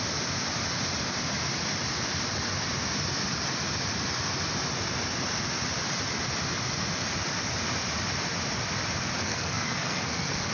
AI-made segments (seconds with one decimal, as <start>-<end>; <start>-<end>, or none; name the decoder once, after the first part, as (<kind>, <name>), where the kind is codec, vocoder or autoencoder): 9.2-10.5 (codec, SNAC)